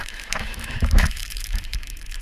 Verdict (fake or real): fake